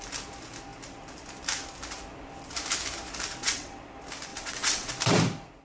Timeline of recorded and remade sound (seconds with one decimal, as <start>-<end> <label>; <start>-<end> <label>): 0.0-3.4 recorded; 3.4-3.9 remade; 3.9-4.3 recorded; 4.3-4.9 remade; 4.9-5.6 recorded